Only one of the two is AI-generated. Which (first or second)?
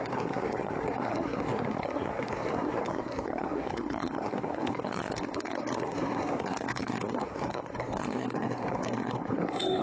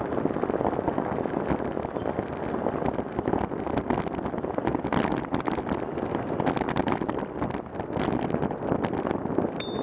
first